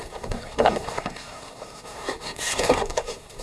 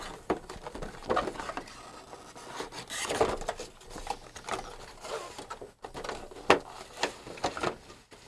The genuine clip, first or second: second